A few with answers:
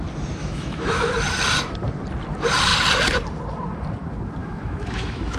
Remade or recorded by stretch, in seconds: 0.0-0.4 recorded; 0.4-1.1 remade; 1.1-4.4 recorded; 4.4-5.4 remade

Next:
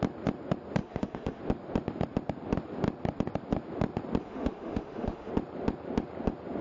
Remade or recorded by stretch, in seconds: 0.0-0.8 recorded; 0.8-1.4 remade; 1.4-4.2 recorded; 4.2-5.3 remade; 5.3-6.6 recorded

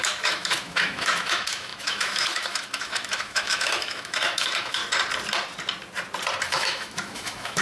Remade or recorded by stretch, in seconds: 0.0-4.8 remade; 4.8-6.5 recorded; 6.5-7.6 remade

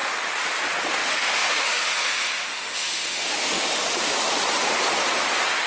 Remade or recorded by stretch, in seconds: 0.0-0.9 recorded; 0.9-3.8 remade; 3.8-5.7 recorded

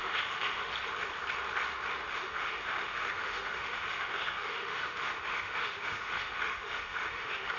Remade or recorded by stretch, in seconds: 0.0-0.7 remade; 0.7-2.1 recorded; 2.1-7.6 remade